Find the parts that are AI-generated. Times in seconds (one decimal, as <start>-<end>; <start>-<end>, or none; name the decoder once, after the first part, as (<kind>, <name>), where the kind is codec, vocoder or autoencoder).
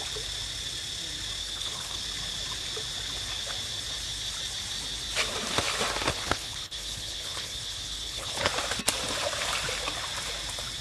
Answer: 1.4-2.0 (codec, HILCodec); 6.1-8.5